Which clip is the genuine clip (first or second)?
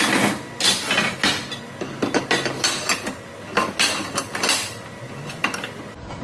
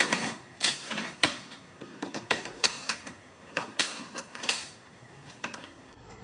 first